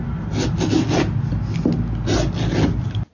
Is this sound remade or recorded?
recorded